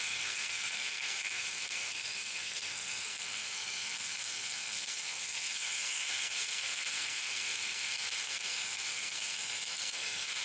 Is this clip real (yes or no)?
no